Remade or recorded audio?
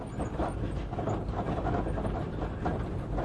recorded